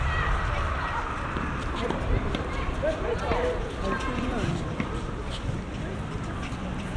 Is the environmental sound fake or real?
fake